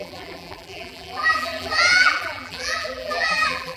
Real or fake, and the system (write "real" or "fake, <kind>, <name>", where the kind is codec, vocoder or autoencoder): fake, vocoder, BigVGAN v2